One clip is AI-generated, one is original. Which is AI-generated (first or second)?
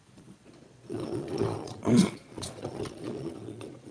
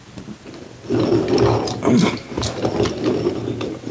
first